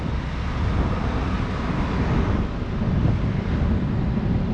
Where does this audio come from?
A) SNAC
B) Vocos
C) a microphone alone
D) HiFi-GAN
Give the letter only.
C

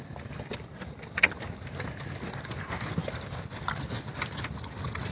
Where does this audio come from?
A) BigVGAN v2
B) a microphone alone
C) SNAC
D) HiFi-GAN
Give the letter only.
B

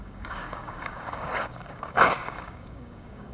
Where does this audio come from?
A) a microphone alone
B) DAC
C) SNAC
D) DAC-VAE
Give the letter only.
B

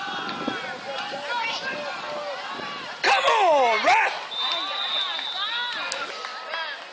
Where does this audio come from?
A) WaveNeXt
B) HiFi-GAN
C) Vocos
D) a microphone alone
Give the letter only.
D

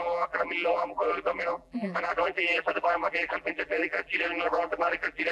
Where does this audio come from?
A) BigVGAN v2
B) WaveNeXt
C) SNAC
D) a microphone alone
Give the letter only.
A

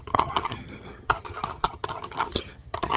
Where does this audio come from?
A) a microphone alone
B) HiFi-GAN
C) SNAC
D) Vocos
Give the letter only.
B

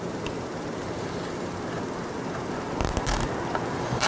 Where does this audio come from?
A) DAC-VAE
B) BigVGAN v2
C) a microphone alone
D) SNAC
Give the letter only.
B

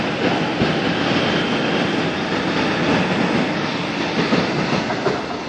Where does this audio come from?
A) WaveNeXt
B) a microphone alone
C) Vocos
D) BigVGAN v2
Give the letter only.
B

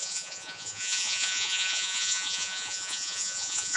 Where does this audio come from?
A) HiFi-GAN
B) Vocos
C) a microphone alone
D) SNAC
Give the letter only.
B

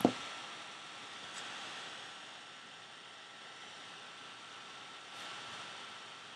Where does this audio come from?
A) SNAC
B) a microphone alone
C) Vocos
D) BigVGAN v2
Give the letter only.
B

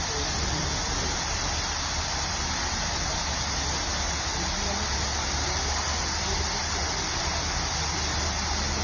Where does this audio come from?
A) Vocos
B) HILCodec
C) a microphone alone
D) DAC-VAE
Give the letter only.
C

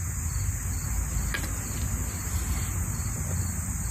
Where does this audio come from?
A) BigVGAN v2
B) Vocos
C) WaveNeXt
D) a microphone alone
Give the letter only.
D